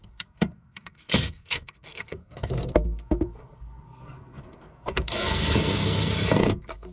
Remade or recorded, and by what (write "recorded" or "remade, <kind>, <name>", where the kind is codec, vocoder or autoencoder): remade, codec, SNAC